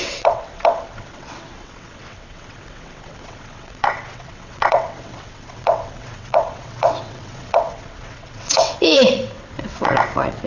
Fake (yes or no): yes